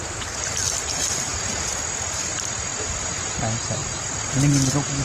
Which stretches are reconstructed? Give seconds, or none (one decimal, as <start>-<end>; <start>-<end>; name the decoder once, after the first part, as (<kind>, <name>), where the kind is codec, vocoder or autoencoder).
2.7-3.3 (vocoder, BigVGAN v2)